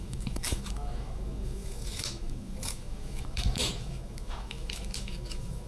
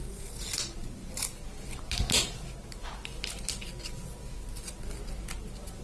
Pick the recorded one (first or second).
second